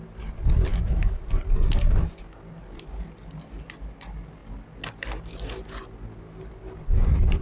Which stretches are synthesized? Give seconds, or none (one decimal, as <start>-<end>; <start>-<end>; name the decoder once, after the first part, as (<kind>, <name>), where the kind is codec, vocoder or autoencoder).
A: 0.7-1.2 (autoencoder, DAC-VAE)